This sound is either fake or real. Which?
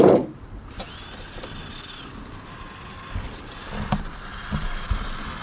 real